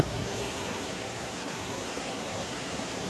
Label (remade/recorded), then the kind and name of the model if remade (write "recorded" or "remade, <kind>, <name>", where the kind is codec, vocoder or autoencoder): remade, codec, SNAC